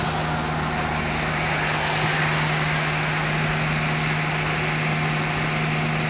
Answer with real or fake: real